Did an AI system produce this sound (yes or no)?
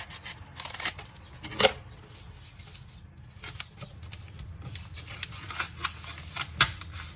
no